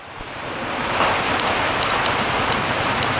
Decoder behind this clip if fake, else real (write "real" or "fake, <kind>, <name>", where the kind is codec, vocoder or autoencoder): real